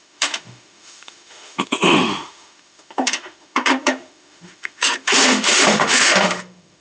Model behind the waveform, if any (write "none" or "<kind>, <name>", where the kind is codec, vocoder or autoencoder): autoencoder, DAC-VAE